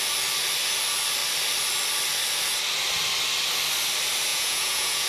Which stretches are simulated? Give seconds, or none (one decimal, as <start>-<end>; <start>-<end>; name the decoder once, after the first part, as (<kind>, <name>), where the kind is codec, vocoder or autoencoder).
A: 4.3-5.1 (vocoder, Vocos)